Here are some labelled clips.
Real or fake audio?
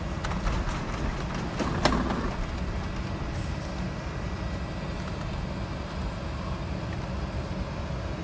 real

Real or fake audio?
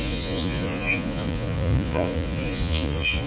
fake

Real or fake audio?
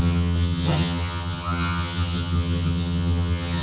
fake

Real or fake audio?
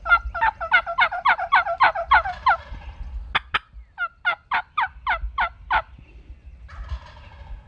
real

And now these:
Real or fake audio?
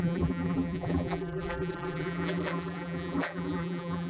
fake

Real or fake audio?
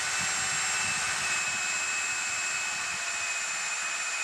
real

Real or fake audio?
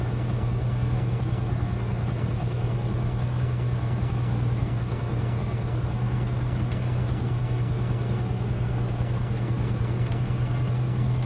fake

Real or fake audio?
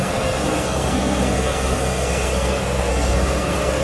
fake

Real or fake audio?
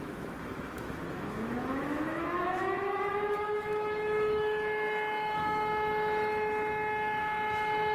fake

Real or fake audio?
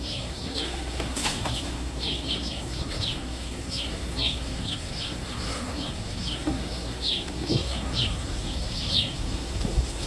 fake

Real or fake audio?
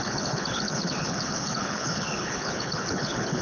fake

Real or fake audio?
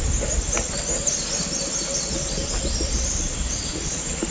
real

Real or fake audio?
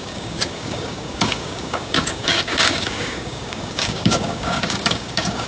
fake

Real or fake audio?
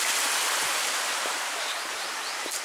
real